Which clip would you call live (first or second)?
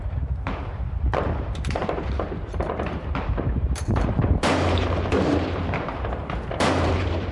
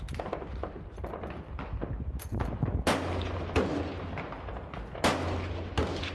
second